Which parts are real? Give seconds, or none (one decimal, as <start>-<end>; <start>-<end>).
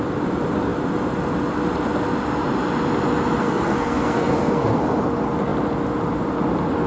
0.0-3.4; 4.8-6.9